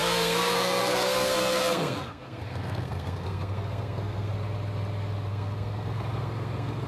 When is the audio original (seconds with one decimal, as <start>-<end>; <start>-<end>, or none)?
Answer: 4.3-5.3